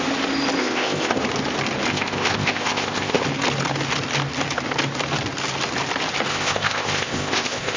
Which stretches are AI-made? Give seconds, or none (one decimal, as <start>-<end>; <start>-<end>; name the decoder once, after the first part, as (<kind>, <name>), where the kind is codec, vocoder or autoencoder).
0.6-1.2 (codec, ZipCodec); 1.9-3.2; 6.3-7.8

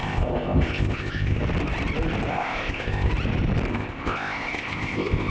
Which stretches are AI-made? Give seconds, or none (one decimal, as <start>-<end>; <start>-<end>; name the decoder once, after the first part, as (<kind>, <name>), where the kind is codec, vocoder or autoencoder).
0.0-1.4 (codec, ZipCodec); 2.3-3.1; 3.7-5.3

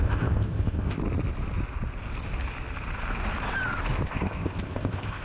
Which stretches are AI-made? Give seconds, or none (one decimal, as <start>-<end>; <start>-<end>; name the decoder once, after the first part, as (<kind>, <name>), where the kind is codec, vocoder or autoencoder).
0.0-1.0 (codec, ZipCodec); 4.1-5.2

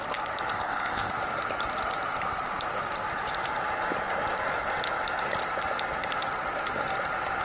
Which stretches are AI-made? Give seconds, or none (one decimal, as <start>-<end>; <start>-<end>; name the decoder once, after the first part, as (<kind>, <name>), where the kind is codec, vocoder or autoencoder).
0.5-1.1 (codec, ZipCodec)

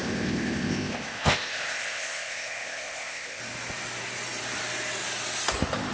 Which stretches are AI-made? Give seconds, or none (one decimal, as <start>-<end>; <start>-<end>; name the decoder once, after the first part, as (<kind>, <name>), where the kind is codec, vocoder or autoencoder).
0.0-3.4 (codec, ZipCodec)

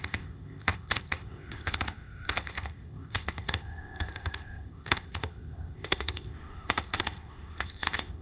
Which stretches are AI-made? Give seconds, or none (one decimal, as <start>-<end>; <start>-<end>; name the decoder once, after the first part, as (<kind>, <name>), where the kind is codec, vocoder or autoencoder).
0.0-8.2 (codec, ZipCodec)